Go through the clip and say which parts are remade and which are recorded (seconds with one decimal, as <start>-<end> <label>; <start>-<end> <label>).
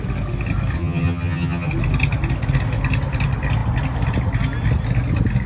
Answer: 0.0-0.8 recorded; 0.8-1.7 remade; 1.7-5.5 recorded